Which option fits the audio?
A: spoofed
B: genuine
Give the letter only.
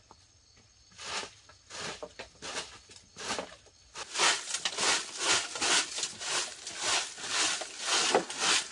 B